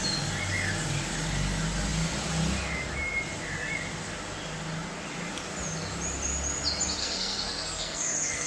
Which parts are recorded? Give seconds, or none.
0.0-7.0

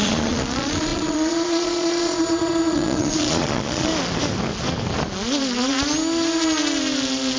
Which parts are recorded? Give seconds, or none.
3.9-7.4

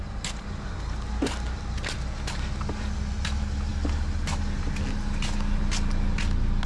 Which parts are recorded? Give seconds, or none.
0.0-6.7